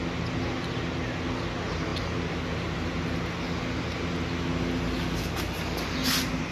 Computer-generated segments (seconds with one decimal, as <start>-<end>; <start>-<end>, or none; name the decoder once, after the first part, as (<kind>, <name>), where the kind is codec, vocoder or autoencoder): none